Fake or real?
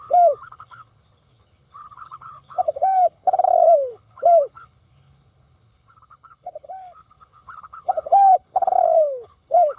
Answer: fake